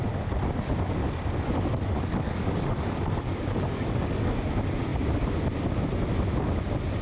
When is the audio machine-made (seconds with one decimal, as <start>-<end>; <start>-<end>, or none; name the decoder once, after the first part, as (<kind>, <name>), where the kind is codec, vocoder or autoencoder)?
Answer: 1.0-4.3 (codec, DAC)